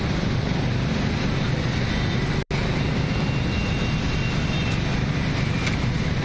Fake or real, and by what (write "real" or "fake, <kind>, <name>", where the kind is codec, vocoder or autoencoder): real